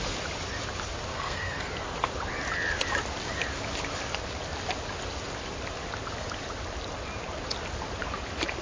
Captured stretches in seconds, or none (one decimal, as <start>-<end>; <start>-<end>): 0.0-1.1; 1.7-8.6